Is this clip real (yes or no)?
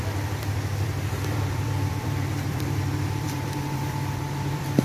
no